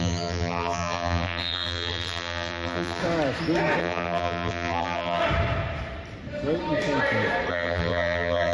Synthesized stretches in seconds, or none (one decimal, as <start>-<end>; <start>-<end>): 0.0-3.0; 3.8-5.2; 7.5-8.5